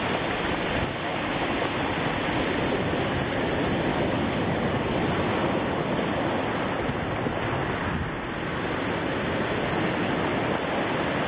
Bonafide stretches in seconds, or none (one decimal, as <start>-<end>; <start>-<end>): 0.0-3.9; 5.0-11.3